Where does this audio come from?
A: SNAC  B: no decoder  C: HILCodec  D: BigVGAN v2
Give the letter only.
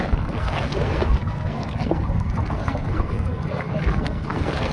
A